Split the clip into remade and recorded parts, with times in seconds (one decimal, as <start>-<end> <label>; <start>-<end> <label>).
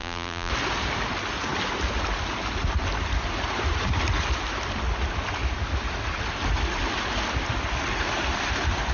0.0-0.5 remade; 0.5-8.9 recorded